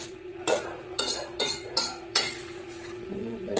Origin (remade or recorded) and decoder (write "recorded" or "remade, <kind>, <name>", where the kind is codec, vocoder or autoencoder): remade, vocoder, Vocos